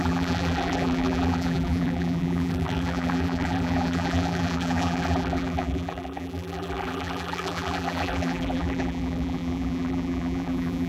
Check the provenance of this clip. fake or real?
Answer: fake